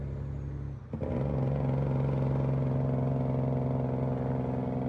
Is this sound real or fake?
real